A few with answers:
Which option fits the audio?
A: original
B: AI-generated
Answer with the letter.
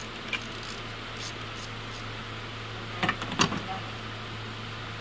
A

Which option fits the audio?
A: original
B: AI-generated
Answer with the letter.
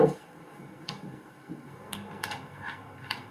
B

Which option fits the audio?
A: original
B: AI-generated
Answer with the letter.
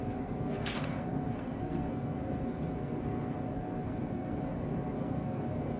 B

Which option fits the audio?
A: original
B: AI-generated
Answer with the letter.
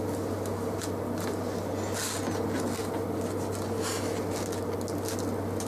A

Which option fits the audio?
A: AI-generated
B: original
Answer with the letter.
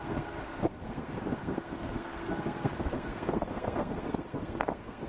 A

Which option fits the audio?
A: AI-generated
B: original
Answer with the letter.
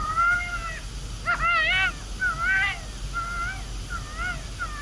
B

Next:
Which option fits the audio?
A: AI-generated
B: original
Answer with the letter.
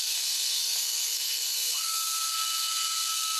A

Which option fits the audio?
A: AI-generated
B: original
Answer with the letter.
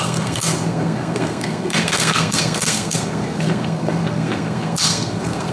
A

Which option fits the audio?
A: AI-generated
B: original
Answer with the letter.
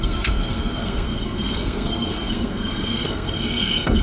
A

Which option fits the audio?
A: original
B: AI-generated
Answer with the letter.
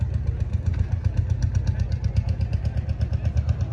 A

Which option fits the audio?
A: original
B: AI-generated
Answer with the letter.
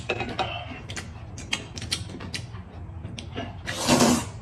A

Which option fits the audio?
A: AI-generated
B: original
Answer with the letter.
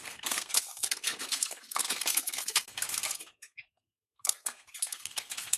A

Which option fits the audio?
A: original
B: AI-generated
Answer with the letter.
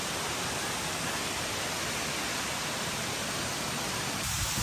A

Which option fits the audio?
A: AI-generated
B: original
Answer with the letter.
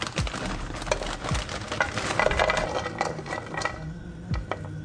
B